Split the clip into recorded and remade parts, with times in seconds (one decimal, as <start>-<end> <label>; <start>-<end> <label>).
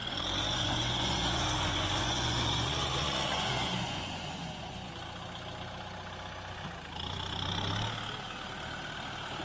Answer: 0.0-4.9 remade; 4.9-9.4 recorded